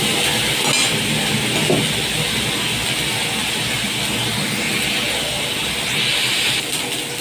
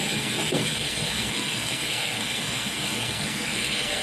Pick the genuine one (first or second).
first